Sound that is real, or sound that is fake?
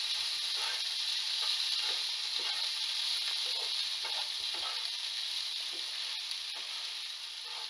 real